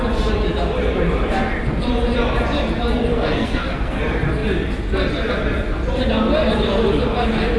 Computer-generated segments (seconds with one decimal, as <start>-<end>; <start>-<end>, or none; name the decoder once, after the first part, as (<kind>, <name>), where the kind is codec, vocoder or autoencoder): 3.1-4.0 (codec, SNAC)